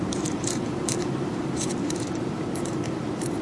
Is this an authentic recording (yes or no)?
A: no